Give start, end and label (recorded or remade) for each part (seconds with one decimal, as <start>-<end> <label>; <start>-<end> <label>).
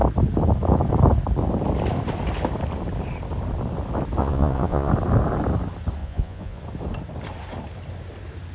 0.0-4.2 recorded; 4.2-4.9 remade; 4.9-6.0 recorded; 6.0-6.6 remade; 6.6-8.5 recorded